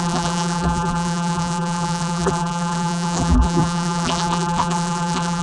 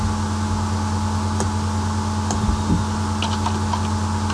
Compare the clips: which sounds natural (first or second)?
second